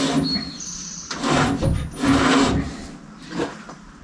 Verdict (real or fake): real